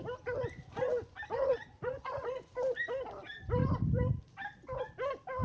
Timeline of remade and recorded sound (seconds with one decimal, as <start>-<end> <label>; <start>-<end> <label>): 0.0-1.4 recorded; 1.4-2.5 remade; 2.5-5.4 recorded